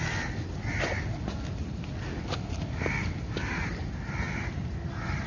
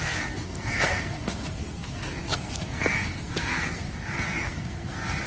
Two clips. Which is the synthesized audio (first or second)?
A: second